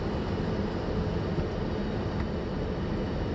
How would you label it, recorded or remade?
recorded